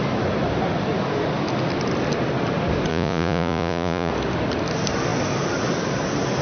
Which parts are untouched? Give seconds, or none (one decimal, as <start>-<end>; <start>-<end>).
0.0-2.9; 4.1-6.4